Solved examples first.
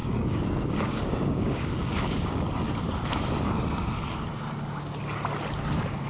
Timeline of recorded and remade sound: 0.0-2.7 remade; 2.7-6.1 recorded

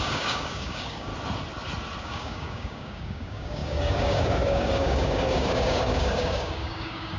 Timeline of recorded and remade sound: 0.0-1.1 remade; 1.1-2.0 recorded; 2.0-7.2 remade

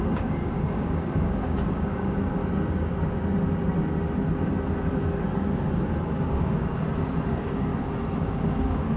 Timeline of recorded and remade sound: 0.0-2.4 remade; 2.4-6.1 recorded; 6.1-6.8 remade; 6.8-7.3 recorded; 7.3-7.7 remade; 7.7-8.2 recorded; 8.2-9.0 remade

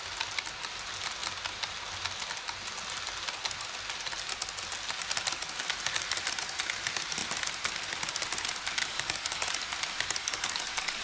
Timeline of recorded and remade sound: 0.0-8.8 recorded; 8.8-9.5 remade; 9.5-10.2 recorded; 10.2-11.0 remade

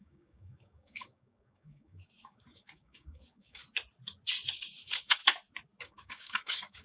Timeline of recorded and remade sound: 0.0-3.6 remade; 3.6-4.5 recorded; 4.5-5.2 remade; 5.2-5.8 recorded; 5.8-6.8 remade

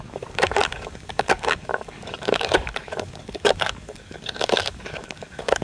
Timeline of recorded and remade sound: 0.0-5.6 remade

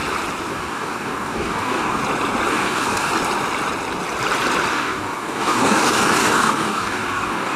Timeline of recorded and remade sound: 0.0-0.5 recorded; 0.5-2.0 remade; 2.0-2.5 recorded; 2.5-3.1 remade; 3.1-4.7 recorded; 4.7-7.6 remade

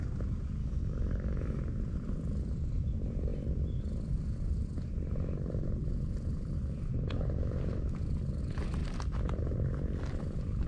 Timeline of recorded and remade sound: 0.0-0.6 recorded; 0.6-1.6 remade; 1.6-10.7 recorded